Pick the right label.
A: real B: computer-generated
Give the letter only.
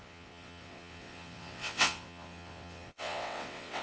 B